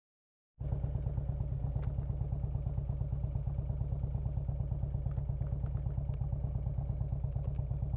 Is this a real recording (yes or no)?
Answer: yes